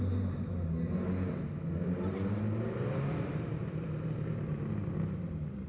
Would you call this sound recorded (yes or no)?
yes